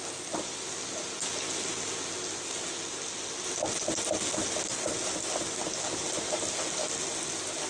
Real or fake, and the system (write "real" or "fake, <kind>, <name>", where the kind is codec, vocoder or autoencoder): real